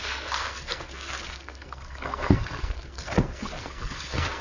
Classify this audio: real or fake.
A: fake